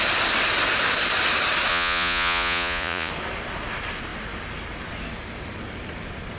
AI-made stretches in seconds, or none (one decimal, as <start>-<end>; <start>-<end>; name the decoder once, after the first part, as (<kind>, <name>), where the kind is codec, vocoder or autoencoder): 1.7-3.1 (vocoder, Vocos)